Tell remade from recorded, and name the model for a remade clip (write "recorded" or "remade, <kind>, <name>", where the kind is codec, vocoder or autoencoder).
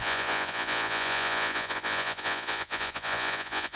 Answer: remade, vocoder, Vocos